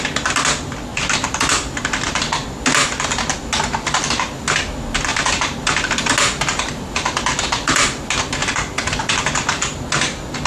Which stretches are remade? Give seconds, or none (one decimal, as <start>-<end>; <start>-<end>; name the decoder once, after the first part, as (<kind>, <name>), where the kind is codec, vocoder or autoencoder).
none